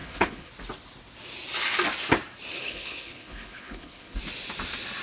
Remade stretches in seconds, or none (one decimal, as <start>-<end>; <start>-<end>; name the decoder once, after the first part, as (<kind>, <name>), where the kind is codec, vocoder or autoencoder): 0.0-0.5 (codec, HILCodec); 2.5-4.2